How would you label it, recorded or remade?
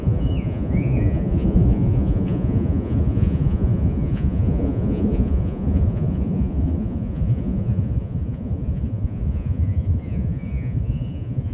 remade